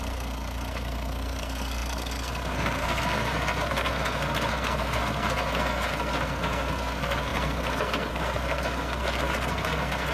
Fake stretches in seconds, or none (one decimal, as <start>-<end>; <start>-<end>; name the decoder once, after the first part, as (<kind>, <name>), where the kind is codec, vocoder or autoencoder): 0.0-10.1 (codec, SNAC)